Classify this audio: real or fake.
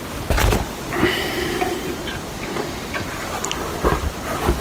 real